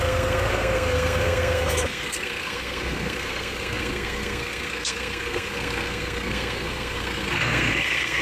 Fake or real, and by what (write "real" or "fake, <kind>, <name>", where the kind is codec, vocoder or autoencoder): fake, codec, SNAC